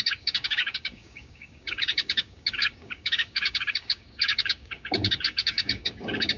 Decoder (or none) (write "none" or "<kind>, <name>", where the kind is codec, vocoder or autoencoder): codec, DAC